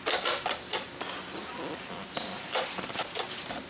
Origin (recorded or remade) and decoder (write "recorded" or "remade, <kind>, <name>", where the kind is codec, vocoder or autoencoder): recorded